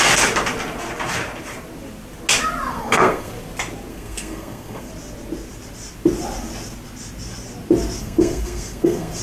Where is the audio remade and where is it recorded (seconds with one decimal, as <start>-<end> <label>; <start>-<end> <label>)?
0.0-2.7 recorded; 2.7-3.3 remade; 3.3-3.9 recorded; 3.9-4.9 remade; 4.9-8.0 recorded; 8.0-9.2 remade